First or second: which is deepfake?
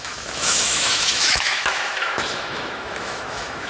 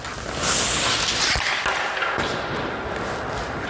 first